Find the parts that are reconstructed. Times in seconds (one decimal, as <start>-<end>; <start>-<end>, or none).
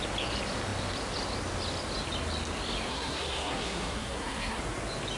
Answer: 2.9-4.6